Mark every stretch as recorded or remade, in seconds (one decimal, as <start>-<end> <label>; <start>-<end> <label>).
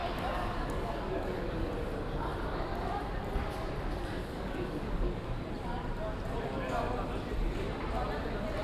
0.0-1.7 remade; 1.7-4.2 recorded; 4.2-5.1 remade; 5.1-8.6 recorded